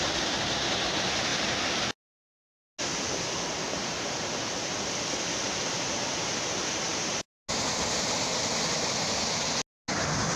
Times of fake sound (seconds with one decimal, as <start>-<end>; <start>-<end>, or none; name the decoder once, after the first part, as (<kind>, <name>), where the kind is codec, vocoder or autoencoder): none